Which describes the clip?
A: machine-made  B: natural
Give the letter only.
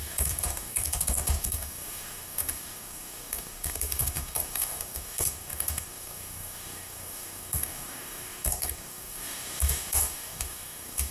A